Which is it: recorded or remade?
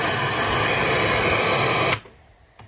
recorded